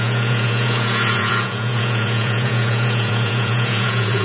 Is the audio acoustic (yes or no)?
no